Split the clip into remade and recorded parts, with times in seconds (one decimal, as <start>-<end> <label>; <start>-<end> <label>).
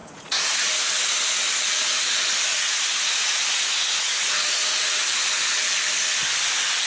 0.0-0.7 remade; 0.7-2.5 recorded; 2.5-5.3 remade; 5.3-6.9 recorded